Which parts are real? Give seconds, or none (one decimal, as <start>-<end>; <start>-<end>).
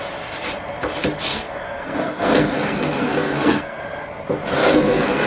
0.0-1.3; 3.8-4.6